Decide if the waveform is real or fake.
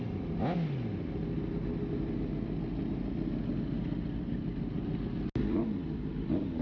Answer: real